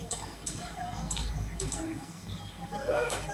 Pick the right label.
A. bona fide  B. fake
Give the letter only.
B